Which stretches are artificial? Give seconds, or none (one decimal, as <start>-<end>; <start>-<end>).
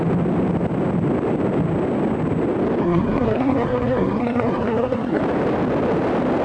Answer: 2.8-5.2